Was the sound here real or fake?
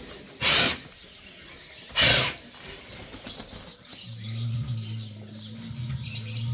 real